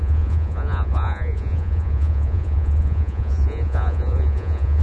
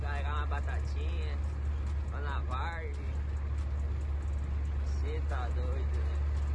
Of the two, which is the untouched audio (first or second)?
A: second